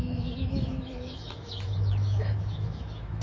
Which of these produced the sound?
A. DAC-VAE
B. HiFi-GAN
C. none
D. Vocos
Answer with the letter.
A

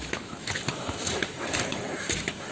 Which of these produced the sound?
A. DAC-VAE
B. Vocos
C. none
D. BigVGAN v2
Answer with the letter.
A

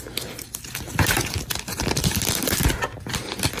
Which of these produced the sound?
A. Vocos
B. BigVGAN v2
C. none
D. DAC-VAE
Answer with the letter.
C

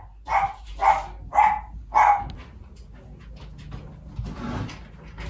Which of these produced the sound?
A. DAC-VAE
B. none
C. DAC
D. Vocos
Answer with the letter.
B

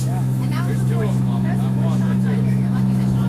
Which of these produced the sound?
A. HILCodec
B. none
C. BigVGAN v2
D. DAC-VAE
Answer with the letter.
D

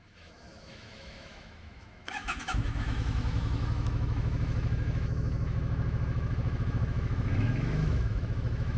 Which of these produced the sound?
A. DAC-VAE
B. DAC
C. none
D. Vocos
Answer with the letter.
A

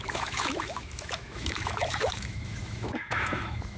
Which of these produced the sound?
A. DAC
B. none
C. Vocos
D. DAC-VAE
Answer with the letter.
D